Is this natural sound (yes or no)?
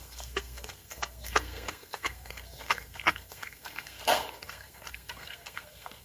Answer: no